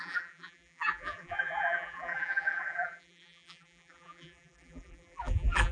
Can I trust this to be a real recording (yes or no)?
no